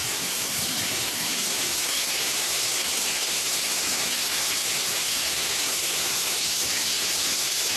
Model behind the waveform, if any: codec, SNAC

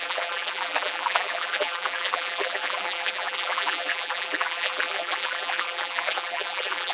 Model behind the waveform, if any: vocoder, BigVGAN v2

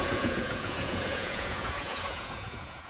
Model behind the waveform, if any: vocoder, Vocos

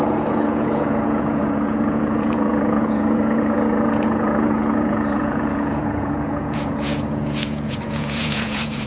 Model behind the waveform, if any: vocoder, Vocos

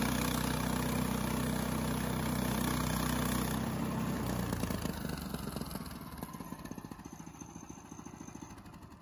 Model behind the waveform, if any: none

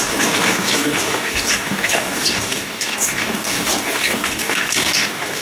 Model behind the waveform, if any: codec, DAC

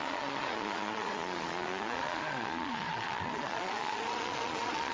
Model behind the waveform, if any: vocoder, Vocos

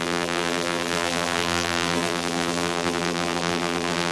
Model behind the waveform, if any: vocoder, BigVGAN v2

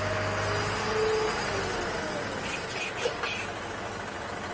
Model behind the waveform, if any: none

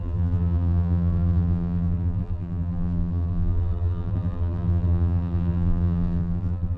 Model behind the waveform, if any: vocoder, BigVGAN v2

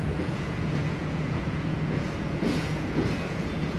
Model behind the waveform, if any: vocoder, Vocos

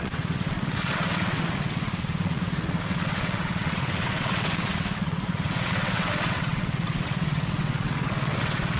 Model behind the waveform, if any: vocoder, WaveNeXt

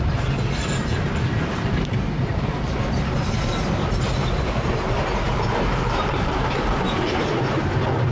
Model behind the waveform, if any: vocoder, BigVGAN v2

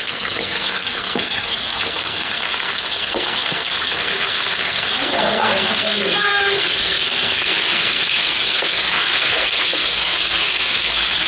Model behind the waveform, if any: codec, SNAC